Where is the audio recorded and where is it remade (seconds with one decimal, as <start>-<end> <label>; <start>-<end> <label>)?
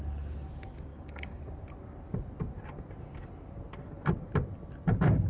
0.0-0.9 recorded; 0.9-1.4 remade; 1.4-5.3 recorded